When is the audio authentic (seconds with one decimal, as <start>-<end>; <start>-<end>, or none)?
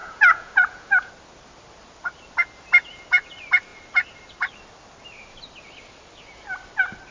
1.1-7.1